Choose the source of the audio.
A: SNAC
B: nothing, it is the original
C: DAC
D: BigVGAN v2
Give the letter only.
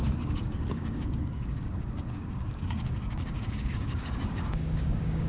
C